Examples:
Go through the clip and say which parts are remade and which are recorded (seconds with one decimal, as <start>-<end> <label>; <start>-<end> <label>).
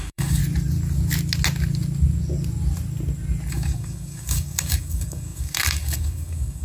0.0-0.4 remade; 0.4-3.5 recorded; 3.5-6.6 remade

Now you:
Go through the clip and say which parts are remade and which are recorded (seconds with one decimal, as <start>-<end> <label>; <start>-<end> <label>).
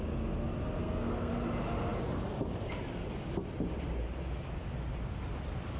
0.0-0.8 recorded; 0.8-1.3 remade; 1.3-5.8 recorded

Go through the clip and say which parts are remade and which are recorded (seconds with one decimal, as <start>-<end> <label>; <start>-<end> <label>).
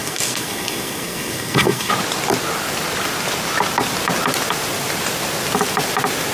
0.0-1.9 remade; 1.9-6.3 recorded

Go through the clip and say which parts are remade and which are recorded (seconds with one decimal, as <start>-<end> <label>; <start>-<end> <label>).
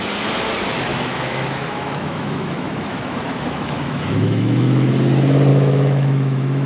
0.0-0.9 recorded; 0.9-4.9 remade; 4.9-5.5 recorded; 5.5-6.7 remade